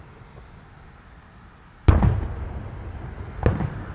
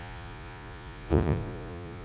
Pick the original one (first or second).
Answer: first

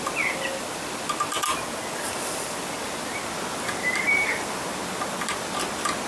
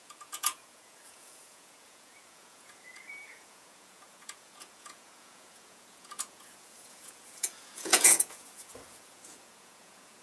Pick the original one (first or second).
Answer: first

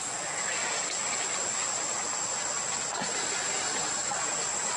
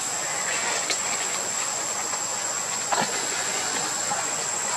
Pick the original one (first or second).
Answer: first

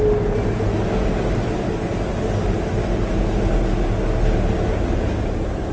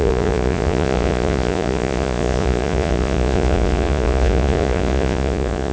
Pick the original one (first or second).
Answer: first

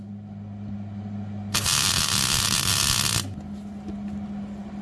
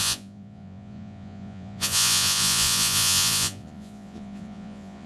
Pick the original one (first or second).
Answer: first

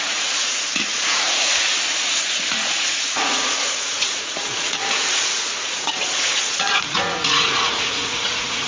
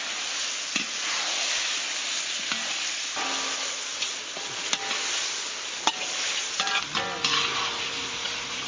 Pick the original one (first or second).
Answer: second